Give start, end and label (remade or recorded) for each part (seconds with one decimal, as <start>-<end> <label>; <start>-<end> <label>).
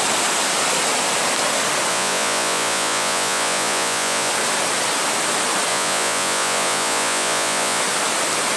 0.0-1.9 recorded; 1.9-4.3 remade; 4.3-5.7 recorded; 5.7-7.8 remade; 7.8-8.6 recorded